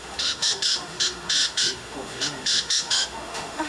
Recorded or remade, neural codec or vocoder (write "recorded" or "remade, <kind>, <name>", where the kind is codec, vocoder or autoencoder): remade, autoencoder, DAC-VAE